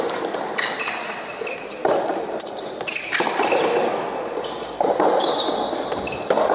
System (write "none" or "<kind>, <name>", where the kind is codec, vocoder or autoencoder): none